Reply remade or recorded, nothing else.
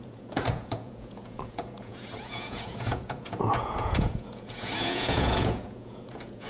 remade